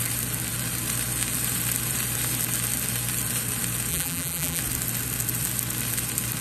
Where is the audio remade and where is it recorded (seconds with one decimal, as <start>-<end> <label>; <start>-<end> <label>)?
0.0-3.9 recorded; 3.9-4.6 remade; 4.6-6.4 recorded